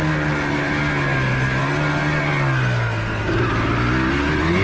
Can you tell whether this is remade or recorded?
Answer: recorded